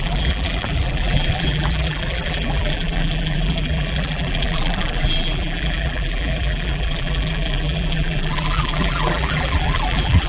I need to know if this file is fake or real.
fake